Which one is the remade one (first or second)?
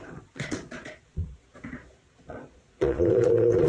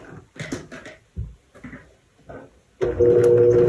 first